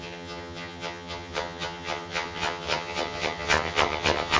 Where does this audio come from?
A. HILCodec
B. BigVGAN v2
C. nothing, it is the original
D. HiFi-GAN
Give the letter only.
D